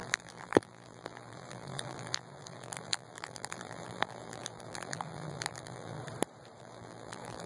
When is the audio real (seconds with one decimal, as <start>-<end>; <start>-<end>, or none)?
6.0-6.6